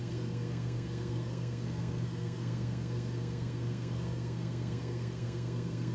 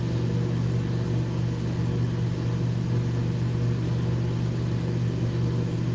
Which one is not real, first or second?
first